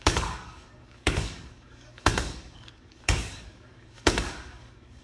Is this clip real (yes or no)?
no